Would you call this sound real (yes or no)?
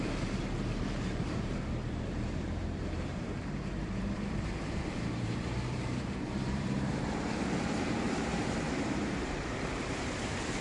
no